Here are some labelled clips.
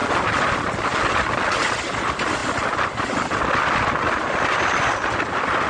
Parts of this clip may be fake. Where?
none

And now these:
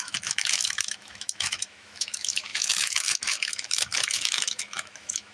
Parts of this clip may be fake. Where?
0.0-5.3 (autoencoder, DAC-VAE)